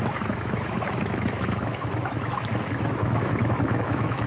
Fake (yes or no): yes